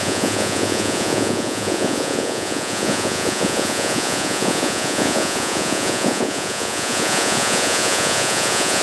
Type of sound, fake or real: fake